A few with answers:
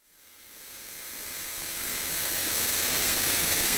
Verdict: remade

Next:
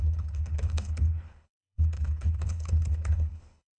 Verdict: remade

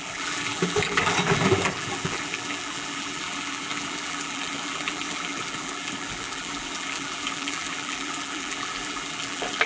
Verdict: remade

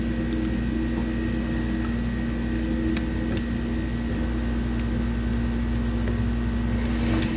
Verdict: recorded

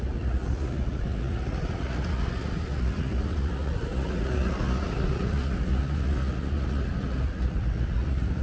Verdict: remade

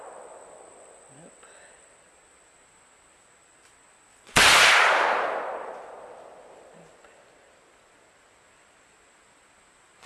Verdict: recorded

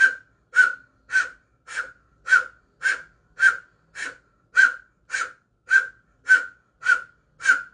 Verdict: recorded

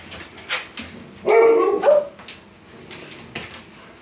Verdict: recorded